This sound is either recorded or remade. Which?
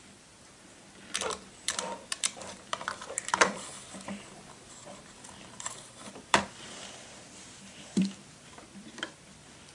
remade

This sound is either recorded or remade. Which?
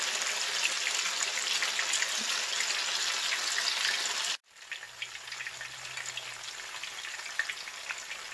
recorded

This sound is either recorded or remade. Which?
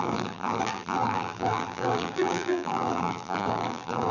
remade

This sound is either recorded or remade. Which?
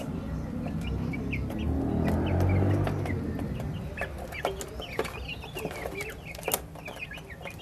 recorded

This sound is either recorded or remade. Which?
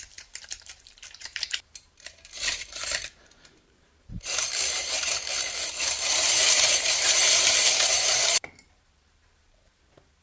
remade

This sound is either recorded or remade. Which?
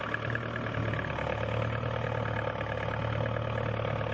recorded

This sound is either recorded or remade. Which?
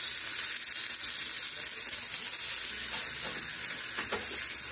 recorded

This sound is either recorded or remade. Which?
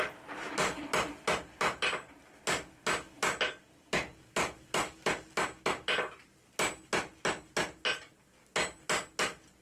recorded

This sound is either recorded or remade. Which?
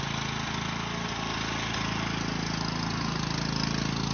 recorded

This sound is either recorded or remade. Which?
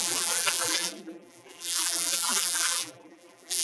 remade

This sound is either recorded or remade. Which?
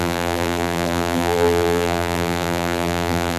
remade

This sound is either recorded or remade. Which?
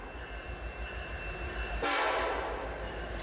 remade